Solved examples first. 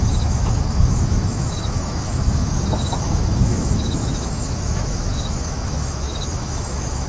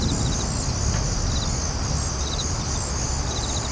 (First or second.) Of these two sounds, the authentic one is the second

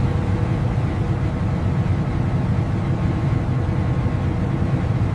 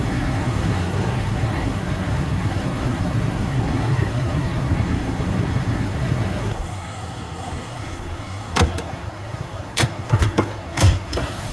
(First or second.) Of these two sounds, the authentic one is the first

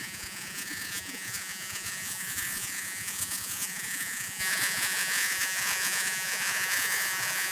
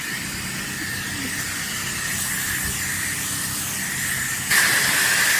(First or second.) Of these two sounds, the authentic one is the second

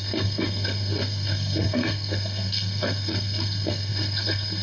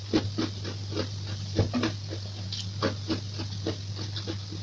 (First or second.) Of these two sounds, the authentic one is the second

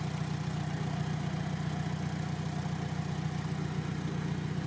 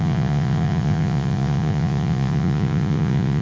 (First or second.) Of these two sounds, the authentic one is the first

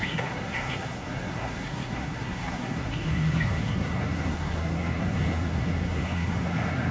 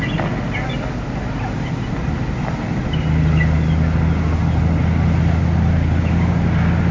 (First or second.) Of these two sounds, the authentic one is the second